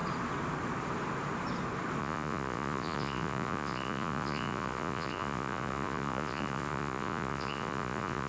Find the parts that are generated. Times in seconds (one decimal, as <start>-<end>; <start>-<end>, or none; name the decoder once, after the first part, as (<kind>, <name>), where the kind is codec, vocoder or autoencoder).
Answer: 2.0-8.3 (vocoder, Vocos)